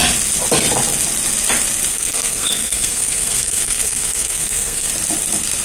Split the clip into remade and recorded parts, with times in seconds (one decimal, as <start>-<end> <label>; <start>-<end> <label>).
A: 0.0-1.9 recorded; 1.9-4.9 remade; 4.9-5.6 recorded